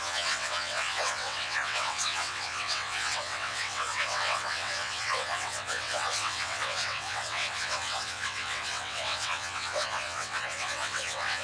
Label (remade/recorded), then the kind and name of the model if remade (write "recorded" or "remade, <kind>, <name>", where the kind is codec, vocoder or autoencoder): remade, vocoder, WaveNeXt